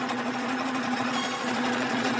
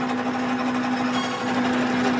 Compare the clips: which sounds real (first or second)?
second